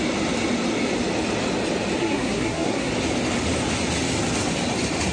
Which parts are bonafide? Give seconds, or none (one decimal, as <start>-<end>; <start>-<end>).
0.0-2.0; 2.9-5.1